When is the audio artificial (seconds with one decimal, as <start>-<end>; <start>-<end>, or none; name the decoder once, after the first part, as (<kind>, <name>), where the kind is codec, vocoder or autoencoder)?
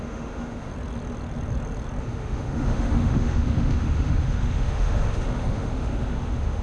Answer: 0.0-0.7 (autoencoder, DAC-VAE); 2.0-6.6